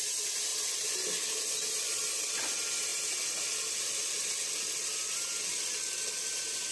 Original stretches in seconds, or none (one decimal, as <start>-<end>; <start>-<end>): 0.0-0.5; 1.4-2.9; 4.6-6.7